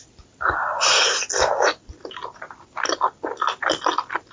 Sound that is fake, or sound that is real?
real